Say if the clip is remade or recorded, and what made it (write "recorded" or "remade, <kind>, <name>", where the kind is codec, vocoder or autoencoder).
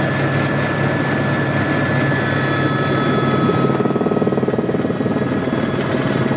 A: recorded